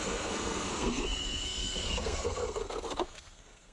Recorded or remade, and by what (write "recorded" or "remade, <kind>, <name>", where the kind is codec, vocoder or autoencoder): remade, codec, SNAC